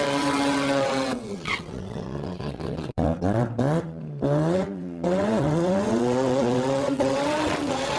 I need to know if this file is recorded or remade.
remade